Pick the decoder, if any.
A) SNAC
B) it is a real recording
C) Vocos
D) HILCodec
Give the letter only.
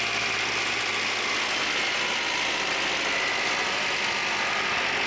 B